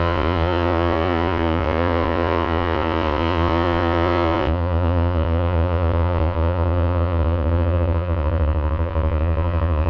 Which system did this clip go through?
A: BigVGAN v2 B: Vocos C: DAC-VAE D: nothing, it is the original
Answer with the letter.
B